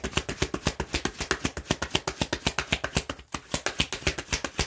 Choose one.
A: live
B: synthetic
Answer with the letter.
A